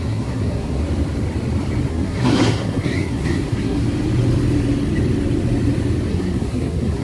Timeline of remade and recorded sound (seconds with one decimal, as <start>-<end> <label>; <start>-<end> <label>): 0.0-0.8 remade; 0.8-1.9 recorded; 1.9-3.8 remade; 3.8-6.1 recorded; 6.1-7.0 remade